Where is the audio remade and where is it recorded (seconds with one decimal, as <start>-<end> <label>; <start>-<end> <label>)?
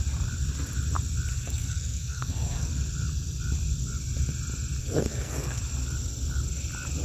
0.0-1.3 recorded; 1.3-2.7 remade; 2.7-4.8 recorded; 4.8-5.6 remade; 5.6-7.0 recorded